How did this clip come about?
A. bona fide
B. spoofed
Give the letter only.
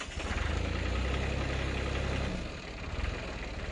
A